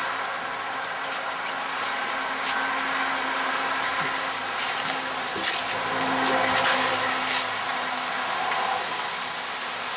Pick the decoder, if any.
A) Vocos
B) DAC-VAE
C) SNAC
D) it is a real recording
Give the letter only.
D